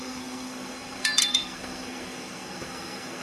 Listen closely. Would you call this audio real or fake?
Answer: fake